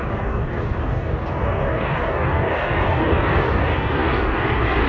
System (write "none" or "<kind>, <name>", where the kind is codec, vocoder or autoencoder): codec, DAC